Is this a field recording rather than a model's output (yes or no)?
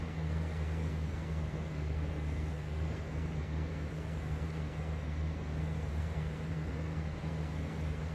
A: no